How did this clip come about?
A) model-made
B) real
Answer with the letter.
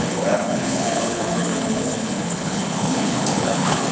A